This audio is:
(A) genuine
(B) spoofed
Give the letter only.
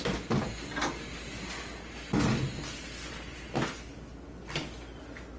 A